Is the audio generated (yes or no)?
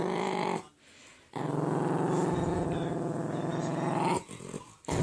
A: no